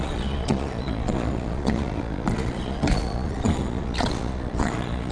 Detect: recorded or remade remade